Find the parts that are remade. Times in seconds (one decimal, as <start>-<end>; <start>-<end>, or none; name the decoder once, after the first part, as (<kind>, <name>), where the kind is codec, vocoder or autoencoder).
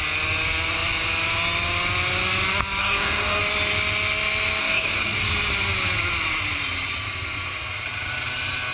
2.8-3.4 (codec, DAC); 4.6-5.2